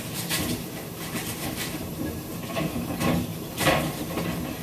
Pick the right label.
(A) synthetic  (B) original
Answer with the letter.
A